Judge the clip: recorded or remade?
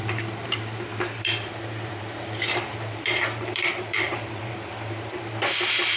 remade